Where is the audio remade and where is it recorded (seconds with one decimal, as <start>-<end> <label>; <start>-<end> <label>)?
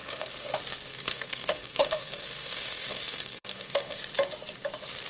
0.0-0.5 remade; 0.5-0.9 recorded; 0.9-4.0 remade; 4.0-5.1 recorded